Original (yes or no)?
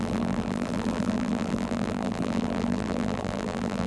no